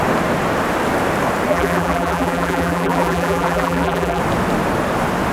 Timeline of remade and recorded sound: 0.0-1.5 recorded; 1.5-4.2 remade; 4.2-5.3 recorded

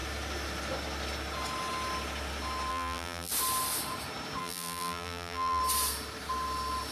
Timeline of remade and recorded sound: 0.0-2.7 recorded; 2.7-3.3 remade; 3.3-4.4 recorded; 4.4-5.6 remade; 5.6-6.9 recorded

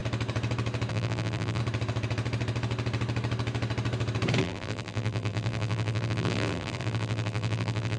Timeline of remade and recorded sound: 0.0-0.9 recorded; 0.9-1.6 remade; 1.6-4.4 recorded; 4.4-8.0 remade

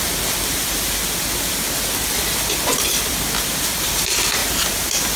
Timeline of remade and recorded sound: 0.0-4.4 recorded; 4.4-5.2 remade

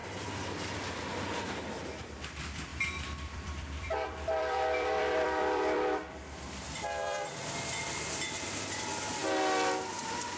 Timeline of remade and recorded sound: 0.0-2.7 recorded; 2.7-7.3 remade; 7.3-10.4 recorded

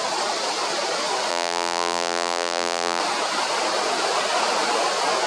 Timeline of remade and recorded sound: 0.0-1.3 recorded; 1.3-3.0 remade; 3.0-5.3 recorded

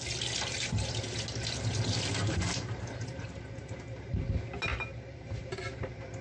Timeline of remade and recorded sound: 0.0-2.2 recorded; 2.2-4.2 remade; 4.2-4.7 recorded; 4.7-5.8 remade; 5.8-6.2 recorded

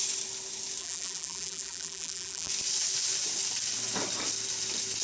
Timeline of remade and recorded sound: 0.0-0.8 recorded; 0.8-2.5 remade; 2.5-5.0 recorded